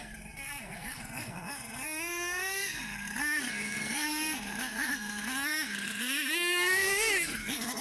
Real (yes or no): no